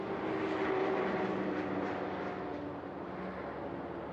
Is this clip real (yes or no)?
yes